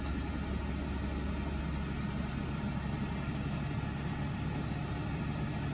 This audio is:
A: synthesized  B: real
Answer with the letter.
B